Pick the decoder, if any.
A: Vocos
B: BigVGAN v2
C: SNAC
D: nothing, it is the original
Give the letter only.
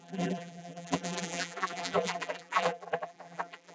B